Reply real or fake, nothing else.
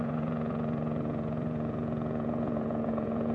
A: fake